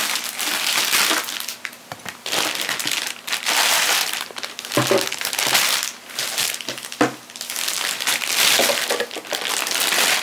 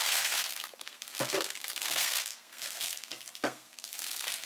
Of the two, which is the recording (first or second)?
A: first